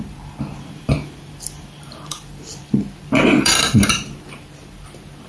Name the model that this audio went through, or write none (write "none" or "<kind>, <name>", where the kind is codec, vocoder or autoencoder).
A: vocoder, BigVGAN v2